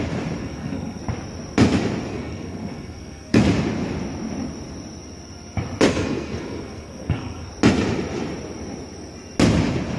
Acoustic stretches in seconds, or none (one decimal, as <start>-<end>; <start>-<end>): 0.0-0.4; 1.0-2.1; 3.4-5.9; 7.5-10.0